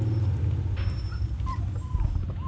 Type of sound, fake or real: real